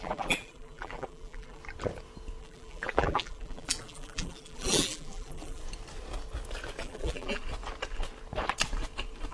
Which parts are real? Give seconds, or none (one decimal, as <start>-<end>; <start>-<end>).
1.6-2.4; 5.6-6.8; 7.4-9.3